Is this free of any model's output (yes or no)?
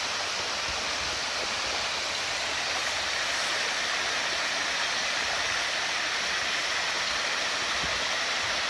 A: yes